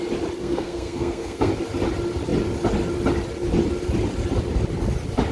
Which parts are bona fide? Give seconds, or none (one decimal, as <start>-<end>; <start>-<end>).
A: 0.0-0.4; 1.5-5.3